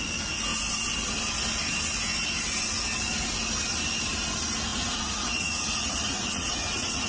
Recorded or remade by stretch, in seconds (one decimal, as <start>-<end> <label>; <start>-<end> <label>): 0.0-4.7 recorded; 4.7-7.1 remade